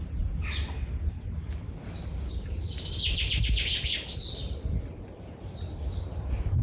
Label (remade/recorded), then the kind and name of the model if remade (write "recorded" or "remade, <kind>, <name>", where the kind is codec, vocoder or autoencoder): recorded